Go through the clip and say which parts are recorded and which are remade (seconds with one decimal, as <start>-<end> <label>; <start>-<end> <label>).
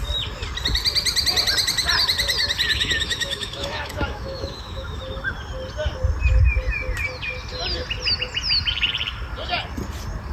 0.0-2.7 recorded; 2.7-5.0 remade; 5.0-10.3 recorded